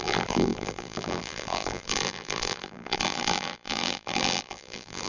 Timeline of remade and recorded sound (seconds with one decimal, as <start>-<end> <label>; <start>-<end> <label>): 0.0-5.1 remade